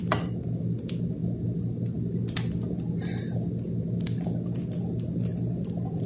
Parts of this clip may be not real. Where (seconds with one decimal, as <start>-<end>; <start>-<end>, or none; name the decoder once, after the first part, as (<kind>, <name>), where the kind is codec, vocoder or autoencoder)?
5.3-6.1 (vocoder, BigVGAN v2)